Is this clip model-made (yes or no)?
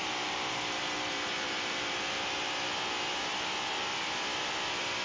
yes